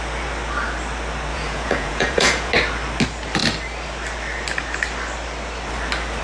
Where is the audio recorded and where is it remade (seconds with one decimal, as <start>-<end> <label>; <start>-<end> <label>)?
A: 0.0-1.3 recorded; 1.3-2.5 remade; 2.5-6.2 recorded